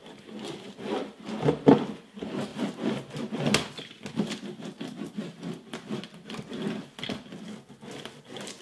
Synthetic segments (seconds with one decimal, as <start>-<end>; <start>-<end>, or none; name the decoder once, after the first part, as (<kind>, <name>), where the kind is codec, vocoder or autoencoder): none